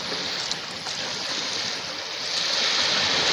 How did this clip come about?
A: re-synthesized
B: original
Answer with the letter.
B